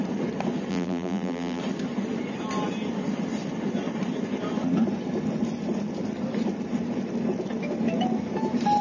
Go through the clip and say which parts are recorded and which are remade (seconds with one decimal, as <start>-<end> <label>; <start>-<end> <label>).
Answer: 0.0-0.7 recorded; 0.7-1.6 remade; 1.6-8.8 recorded